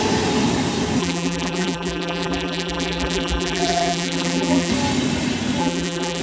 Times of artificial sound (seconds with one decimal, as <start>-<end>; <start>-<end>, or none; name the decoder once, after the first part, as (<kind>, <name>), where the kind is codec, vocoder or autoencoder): 1.0-4.7 (vocoder, BigVGAN v2); 5.6-6.2